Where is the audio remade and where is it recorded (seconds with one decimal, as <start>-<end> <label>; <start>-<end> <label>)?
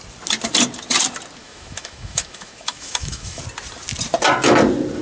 0.0-1.4 recorded; 1.4-3.4 remade; 3.4-5.0 recorded